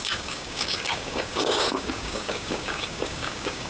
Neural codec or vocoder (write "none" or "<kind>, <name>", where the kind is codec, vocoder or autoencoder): codec, DAC